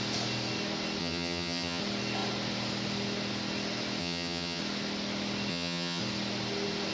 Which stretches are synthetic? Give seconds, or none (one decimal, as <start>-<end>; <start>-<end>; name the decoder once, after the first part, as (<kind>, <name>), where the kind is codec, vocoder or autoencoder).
1.0-1.8 (vocoder, HiFi-GAN); 4.0-4.6; 5.5-6.0